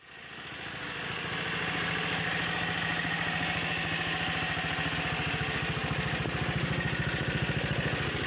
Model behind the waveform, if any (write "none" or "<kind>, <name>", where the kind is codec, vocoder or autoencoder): none